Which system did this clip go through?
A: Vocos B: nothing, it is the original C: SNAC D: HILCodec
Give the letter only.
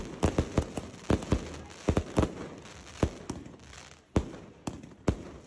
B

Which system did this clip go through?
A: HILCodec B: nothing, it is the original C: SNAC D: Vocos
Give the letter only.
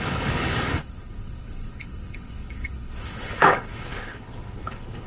A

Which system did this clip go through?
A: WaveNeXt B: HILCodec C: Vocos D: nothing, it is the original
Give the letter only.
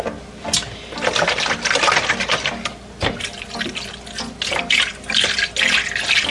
D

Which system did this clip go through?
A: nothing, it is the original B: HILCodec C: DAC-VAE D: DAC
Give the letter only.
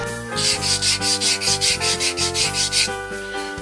A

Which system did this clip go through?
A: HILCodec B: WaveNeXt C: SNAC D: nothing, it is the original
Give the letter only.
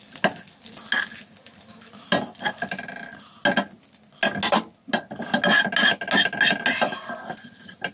D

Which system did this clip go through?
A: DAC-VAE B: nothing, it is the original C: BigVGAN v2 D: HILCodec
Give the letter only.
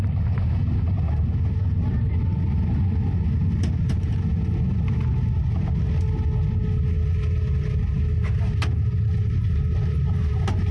B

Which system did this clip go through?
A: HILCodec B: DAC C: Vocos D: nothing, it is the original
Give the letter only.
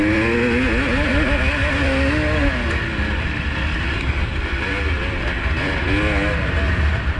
D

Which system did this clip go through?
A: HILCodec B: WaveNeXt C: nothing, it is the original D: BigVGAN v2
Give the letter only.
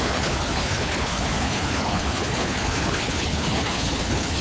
A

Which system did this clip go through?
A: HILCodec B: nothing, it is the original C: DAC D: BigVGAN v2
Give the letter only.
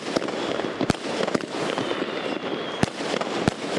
B